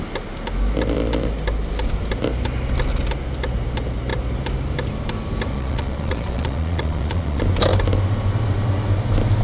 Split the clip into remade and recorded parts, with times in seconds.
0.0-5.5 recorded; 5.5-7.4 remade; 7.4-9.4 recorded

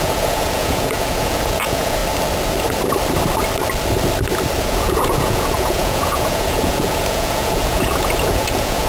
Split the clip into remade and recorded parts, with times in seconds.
0.0-2.0 remade; 2.0-4.6 recorded; 4.6-8.9 remade

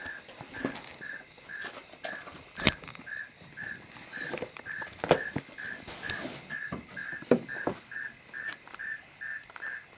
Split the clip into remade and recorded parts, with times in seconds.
0.0-10.0 recorded